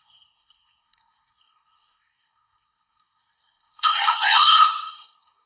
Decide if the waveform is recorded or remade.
remade